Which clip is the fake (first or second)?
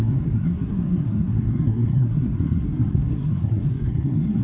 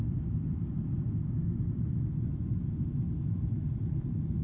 first